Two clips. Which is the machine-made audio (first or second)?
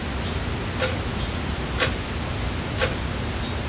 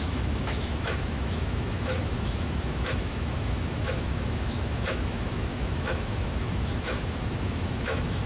second